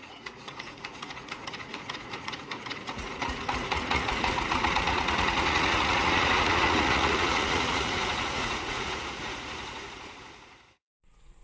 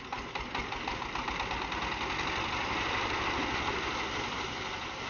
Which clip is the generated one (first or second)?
first